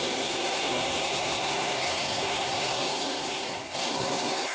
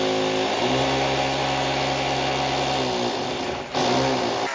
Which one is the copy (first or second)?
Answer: first